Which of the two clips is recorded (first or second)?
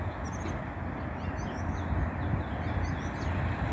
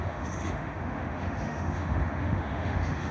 first